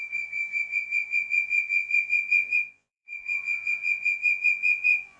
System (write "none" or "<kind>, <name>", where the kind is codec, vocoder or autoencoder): vocoder, Vocos